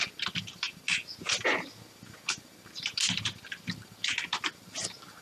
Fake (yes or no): no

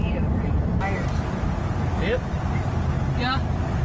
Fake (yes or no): no